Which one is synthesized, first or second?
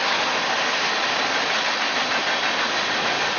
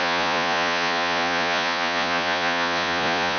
second